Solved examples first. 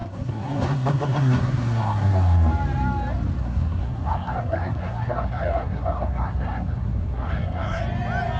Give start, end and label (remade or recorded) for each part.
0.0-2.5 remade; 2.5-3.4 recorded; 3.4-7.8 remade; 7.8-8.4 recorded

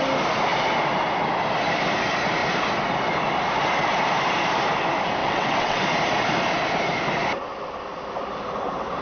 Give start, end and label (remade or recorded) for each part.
0.0-5.2 recorded; 5.2-5.8 remade; 5.8-9.0 recorded

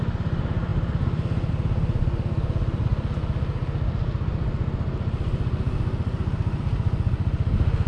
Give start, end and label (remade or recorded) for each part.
0.0-7.9 recorded

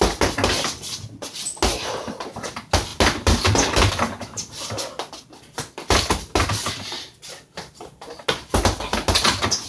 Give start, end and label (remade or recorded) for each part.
0.0-9.7 recorded

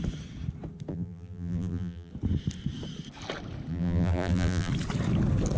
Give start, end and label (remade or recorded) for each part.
0.0-0.9 recorded; 0.9-2.1 remade; 2.1-3.7 recorded; 3.7-4.7 remade; 4.7-5.6 recorded

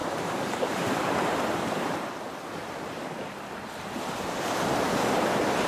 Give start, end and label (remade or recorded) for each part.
0.0-2.1 remade; 2.1-2.6 recorded; 2.6-4.1 remade; 4.1-5.7 recorded

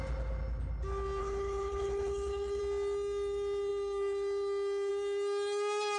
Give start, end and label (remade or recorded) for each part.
0.0-1.2 recorded; 1.2-2.6 remade; 2.6-6.0 recorded

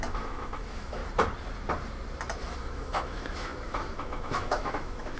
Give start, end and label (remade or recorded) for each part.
0.0-1.0 remade; 1.0-2.6 recorded; 2.6-5.2 remade